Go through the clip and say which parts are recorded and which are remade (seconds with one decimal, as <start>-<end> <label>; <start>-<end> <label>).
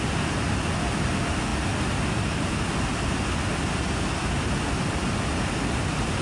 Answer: 0.0-6.2 recorded